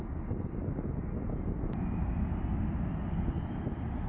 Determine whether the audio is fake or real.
real